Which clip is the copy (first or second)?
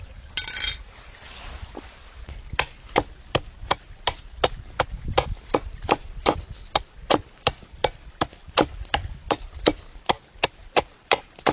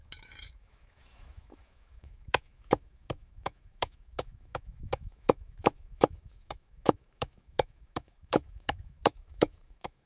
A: second